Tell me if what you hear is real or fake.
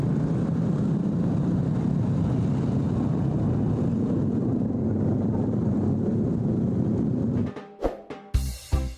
real